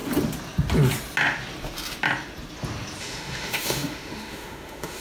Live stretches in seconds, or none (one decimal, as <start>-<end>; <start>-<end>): 0.0-3.0